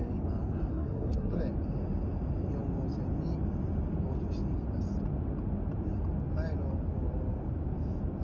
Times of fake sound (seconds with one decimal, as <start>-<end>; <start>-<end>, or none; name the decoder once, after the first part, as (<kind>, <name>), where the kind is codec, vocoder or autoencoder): 0.7-1.4 (codec, SNAC)